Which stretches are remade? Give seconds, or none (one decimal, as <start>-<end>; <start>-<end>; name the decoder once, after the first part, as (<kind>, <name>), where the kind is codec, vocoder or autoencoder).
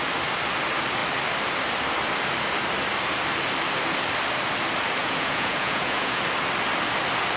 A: 5.0-6.2 (vocoder, Vocos)